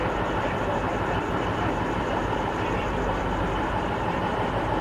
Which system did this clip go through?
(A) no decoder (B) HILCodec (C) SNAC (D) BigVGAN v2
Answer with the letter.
D